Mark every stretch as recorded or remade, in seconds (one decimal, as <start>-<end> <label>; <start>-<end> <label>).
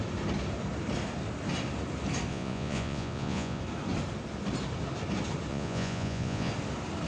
0.0-2.3 recorded; 2.3-3.6 remade; 3.6-5.5 recorded; 5.5-6.5 remade; 6.5-7.1 recorded